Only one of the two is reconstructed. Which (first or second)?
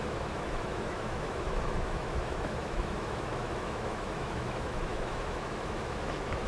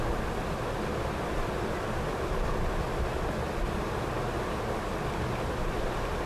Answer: first